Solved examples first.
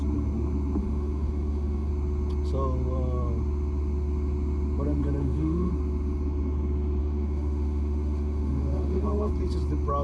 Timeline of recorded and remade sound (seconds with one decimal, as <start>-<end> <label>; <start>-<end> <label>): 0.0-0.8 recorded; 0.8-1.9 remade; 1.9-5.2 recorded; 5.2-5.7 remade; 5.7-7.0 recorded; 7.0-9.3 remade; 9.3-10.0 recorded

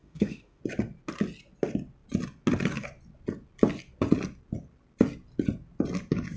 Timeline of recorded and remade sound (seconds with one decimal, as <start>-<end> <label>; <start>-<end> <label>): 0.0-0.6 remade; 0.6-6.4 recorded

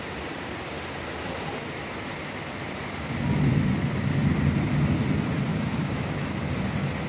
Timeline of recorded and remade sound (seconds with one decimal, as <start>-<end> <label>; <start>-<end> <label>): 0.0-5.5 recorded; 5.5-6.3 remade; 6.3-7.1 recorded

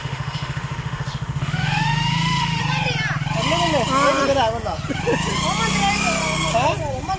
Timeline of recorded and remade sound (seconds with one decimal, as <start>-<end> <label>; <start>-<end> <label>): 0.0-2.6 remade; 2.6-7.2 recorded

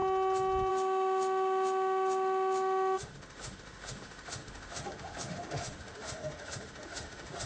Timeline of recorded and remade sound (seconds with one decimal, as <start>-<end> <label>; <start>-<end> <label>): 0.0-0.7 recorded; 0.7-7.5 remade